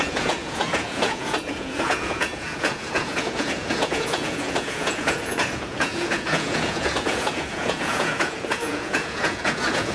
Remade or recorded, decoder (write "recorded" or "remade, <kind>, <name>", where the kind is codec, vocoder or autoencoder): remade, vocoder, Vocos